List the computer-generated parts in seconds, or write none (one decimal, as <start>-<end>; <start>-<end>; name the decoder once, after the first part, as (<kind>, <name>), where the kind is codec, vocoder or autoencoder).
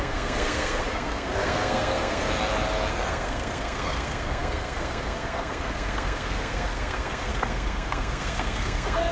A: 0.0-2.3 (codec, SNAC); 2.9-9.1